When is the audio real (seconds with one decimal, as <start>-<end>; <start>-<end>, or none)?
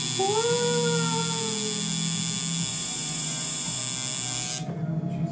0.0-2.7; 3.8-5.3